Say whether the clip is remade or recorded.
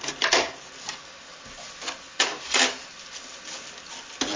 recorded